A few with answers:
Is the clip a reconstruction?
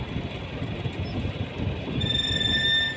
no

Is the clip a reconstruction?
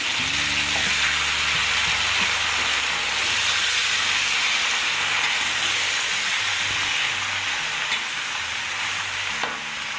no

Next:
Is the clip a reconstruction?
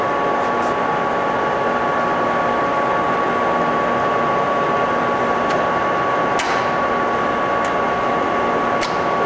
no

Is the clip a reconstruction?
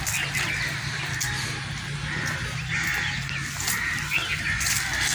no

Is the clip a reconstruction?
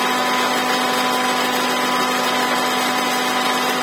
no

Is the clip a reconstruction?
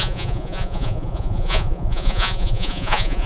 yes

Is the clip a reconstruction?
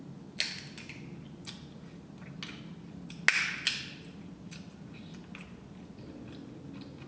no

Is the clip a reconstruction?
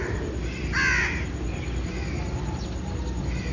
no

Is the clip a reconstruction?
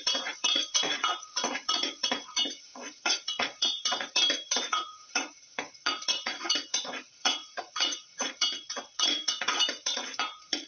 yes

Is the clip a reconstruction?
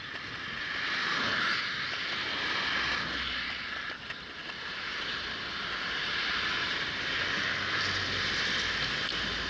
no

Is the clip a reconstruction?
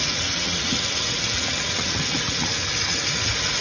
yes